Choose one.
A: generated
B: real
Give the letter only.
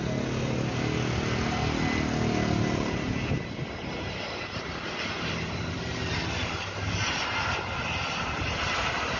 B